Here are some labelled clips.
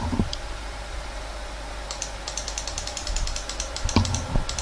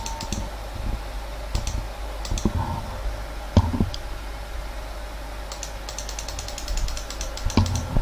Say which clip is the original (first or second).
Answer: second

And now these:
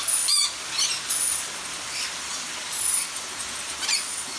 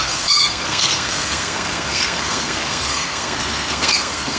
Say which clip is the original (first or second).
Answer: first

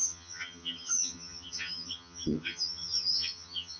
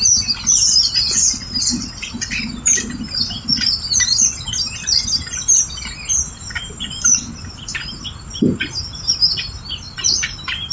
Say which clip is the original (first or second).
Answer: second